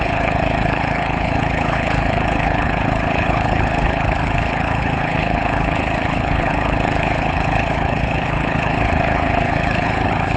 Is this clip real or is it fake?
fake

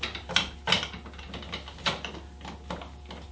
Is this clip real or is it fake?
real